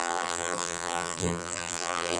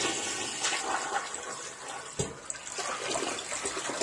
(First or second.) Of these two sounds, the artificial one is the first